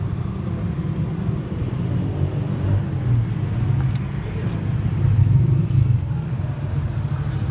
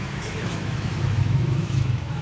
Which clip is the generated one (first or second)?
second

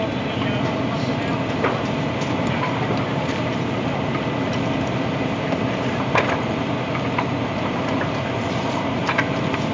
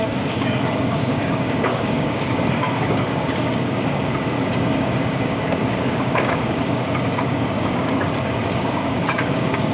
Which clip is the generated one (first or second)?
second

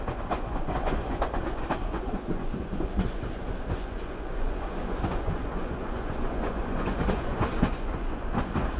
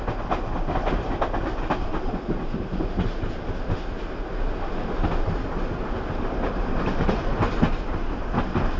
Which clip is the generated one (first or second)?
first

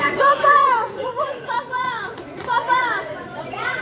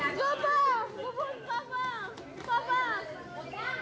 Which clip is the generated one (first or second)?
first